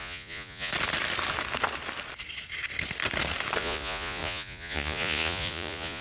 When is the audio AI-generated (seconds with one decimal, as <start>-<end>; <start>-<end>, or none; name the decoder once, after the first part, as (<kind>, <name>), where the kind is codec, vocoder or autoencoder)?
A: 0.0-0.7 (vocoder, Vocos); 3.6-6.0